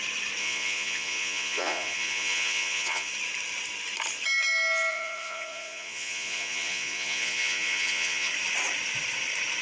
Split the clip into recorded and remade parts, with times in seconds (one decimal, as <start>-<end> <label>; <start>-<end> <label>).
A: 0.0-0.4 recorded; 0.4-3.1 remade; 3.1-4.9 recorded; 4.9-8.3 remade; 8.3-9.6 recorded